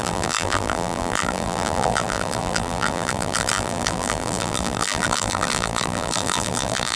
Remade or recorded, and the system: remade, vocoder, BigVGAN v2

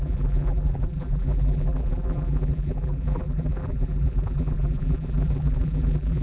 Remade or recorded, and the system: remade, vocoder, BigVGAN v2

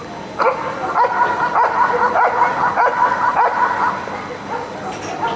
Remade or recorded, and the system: recorded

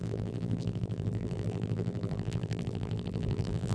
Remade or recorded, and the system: remade, vocoder, BigVGAN v2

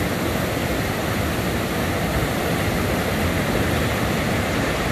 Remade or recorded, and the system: recorded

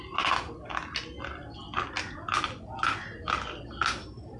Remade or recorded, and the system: recorded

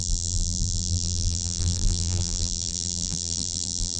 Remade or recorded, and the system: remade, vocoder, BigVGAN v2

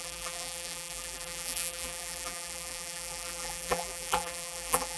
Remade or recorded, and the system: remade, vocoder, BigVGAN v2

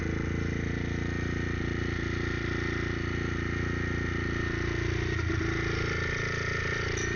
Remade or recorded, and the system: recorded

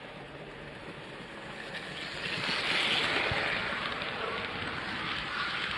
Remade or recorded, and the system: recorded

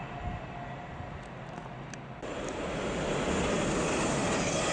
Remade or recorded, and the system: recorded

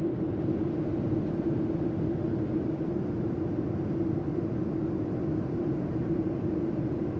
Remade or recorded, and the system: recorded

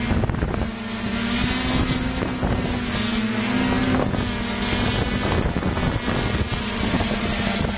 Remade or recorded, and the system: recorded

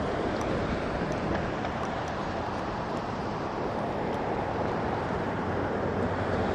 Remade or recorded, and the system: remade, vocoder, BigVGAN v2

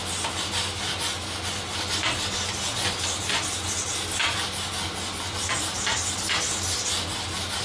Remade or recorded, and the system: recorded